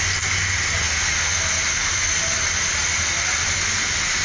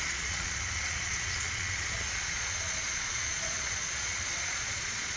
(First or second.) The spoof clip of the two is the second